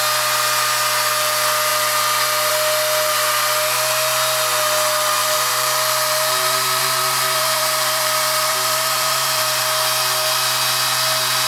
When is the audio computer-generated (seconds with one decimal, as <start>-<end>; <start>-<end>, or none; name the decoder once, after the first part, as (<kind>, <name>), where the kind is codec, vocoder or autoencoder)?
5.2-9.6 (vocoder, BigVGAN v2)